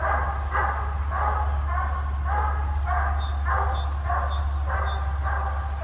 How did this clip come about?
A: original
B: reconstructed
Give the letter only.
A